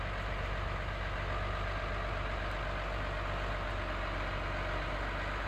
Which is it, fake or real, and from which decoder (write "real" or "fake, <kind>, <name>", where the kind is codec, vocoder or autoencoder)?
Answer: real